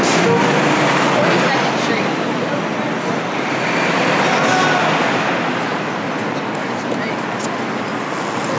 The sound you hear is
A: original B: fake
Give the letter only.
A